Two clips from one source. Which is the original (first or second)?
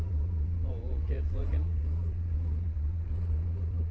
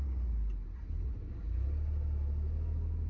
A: second